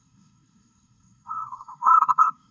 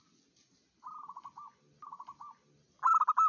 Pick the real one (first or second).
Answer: second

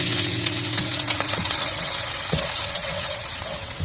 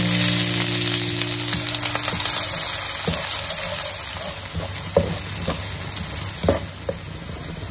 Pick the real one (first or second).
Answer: second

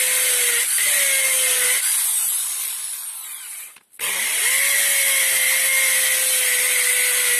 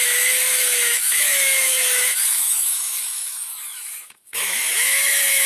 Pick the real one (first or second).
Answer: first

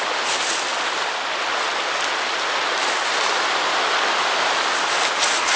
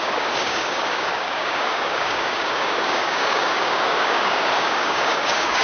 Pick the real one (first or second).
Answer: first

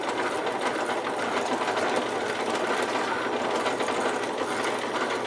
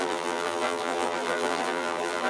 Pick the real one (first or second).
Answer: first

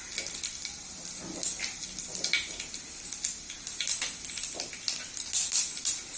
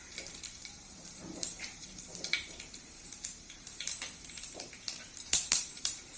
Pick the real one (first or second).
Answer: first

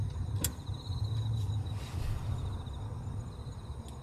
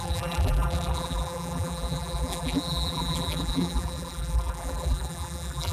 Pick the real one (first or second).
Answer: first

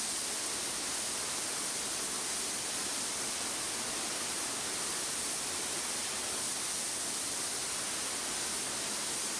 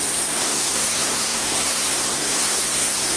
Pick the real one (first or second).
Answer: first